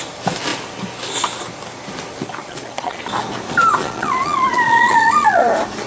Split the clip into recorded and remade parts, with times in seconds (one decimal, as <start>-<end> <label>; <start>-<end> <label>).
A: 0.0-2.4 recorded; 2.4-3.0 remade; 3.0-3.8 recorded; 3.8-5.5 remade; 5.5-5.9 recorded